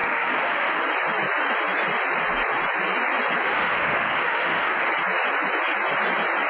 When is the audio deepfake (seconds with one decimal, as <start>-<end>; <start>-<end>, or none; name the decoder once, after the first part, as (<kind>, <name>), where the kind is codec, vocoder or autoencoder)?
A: 0.0-0.8 (autoencoder, DAC-VAE); 3.4-4.9